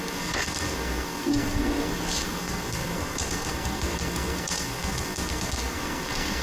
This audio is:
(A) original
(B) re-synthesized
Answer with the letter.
B